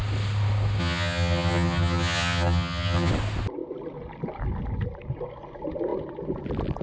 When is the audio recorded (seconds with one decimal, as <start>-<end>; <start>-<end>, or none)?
0.0-0.8; 3.1-6.8